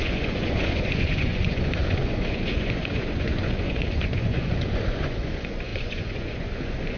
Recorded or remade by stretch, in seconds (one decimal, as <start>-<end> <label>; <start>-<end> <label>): 0.0-7.0 remade